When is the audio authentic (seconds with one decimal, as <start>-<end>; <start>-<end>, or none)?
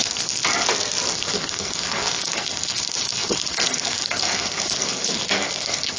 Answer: 0.4-1.1